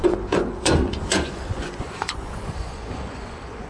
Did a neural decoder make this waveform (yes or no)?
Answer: yes